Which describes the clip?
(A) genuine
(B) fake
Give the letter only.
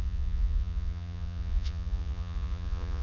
B